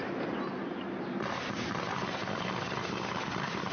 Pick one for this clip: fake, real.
real